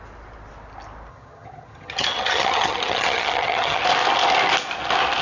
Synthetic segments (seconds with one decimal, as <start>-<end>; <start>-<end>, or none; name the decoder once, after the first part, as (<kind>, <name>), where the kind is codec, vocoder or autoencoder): 1.1-3.8 (vocoder, HiFi-GAN)